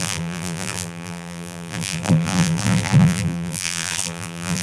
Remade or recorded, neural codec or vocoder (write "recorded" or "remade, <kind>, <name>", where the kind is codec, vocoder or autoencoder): remade, vocoder, BigVGAN v2